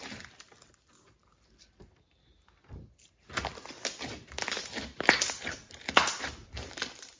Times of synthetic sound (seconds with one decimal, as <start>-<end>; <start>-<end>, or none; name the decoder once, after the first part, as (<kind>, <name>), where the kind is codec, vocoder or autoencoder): 0.0-1.2 (vocoder, BigVGAN v2); 5.4-7.2

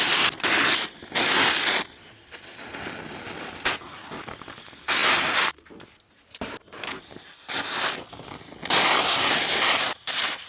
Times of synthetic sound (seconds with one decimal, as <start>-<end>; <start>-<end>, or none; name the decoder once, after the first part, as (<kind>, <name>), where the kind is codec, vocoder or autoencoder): none

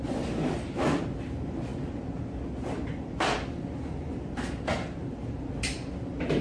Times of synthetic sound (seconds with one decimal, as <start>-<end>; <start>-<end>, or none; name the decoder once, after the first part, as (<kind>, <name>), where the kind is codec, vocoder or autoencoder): none

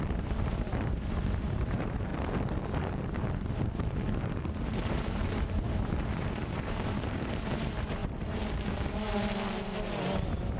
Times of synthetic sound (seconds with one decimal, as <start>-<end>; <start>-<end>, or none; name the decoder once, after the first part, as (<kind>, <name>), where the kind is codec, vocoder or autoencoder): 0.0-2.1 (vocoder, BigVGAN v2); 4.1-10.6

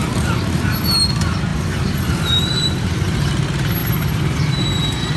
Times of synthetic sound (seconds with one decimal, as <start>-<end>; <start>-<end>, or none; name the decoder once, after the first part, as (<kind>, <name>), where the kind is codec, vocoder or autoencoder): 0.0-1.0 (vocoder, BigVGAN v2); 1.5-3.3; 3.8-4.6

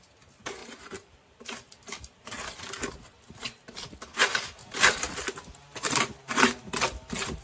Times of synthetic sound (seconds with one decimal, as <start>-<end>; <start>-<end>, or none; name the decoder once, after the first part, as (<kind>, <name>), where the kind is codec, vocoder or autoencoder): 0.6-2.6 (vocoder, BigVGAN v2)

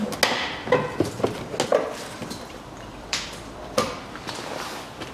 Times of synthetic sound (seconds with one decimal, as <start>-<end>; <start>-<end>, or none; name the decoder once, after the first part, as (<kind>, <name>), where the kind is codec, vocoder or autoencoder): 1.7-4.0 (vocoder, BigVGAN v2)